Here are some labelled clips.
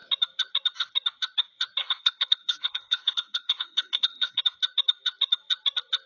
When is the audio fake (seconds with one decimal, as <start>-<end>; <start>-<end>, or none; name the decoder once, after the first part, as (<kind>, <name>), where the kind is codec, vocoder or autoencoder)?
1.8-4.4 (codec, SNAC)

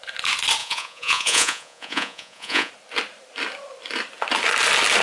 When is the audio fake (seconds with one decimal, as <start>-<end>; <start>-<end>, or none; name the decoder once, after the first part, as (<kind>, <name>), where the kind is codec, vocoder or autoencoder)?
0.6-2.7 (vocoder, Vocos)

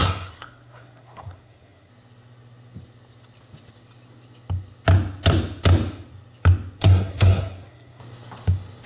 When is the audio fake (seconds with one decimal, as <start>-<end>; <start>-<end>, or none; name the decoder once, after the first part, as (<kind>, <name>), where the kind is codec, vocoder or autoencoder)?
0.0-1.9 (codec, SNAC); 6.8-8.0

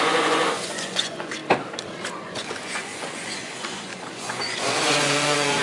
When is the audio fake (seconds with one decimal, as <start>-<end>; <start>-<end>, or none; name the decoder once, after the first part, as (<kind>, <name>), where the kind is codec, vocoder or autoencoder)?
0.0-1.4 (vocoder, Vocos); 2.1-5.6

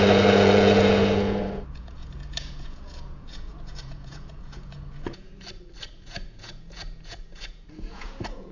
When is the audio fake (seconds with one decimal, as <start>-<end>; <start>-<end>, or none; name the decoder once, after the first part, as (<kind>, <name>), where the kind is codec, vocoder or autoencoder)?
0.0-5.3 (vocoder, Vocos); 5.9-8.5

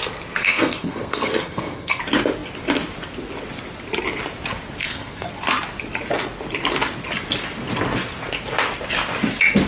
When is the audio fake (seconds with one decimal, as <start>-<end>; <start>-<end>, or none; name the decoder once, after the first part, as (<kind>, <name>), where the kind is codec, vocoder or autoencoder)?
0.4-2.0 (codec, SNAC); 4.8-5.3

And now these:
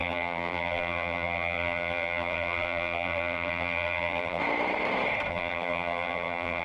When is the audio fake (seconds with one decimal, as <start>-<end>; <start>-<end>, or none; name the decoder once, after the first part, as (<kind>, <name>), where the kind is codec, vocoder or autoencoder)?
0.0-4.4 (vocoder, BigVGAN v2); 5.3-6.6

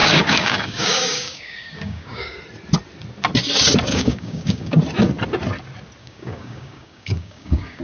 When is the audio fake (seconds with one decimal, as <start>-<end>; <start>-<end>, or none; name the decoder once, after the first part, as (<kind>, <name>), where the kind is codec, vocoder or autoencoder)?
0.0-2.4 (codec, DAC); 3.9-4.8; 6.0-7.8